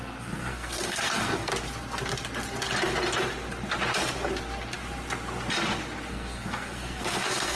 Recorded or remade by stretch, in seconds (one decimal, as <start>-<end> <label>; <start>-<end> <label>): 0.0-1.5 remade; 1.5-6.1 recorded; 6.1-7.6 remade